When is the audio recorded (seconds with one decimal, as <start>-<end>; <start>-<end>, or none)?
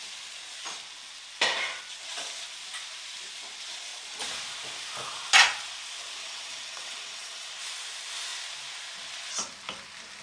0.0-6.2; 7.5-10.2